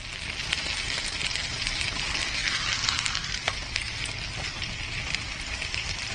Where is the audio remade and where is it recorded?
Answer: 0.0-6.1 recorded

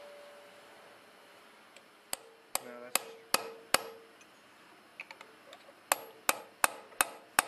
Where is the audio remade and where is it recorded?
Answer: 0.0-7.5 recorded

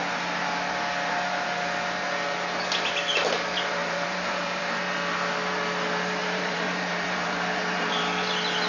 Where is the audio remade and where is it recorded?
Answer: 0.0-3.8 recorded; 3.8-4.6 remade; 4.6-6.2 recorded; 6.2-8.0 remade; 8.0-8.7 recorded

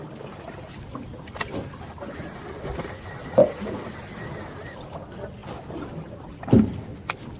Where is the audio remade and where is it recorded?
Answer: 0.0-7.4 recorded

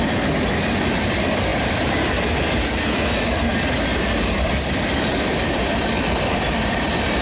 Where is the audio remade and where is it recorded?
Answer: 0.0-1.5 recorded; 1.5-2.1 remade; 2.1-3.9 recorded; 3.9-7.2 remade

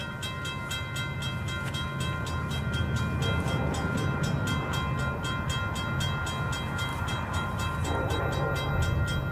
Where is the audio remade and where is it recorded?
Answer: 0.0-6.9 recorded; 6.9-8.2 remade; 8.2-9.3 recorded

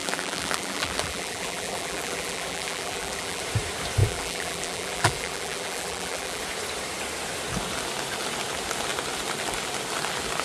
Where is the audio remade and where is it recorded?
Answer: 0.0-3.4 remade; 3.4-4.0 recorded; 4.0-6.4 remade; 6.4-10.4 recorded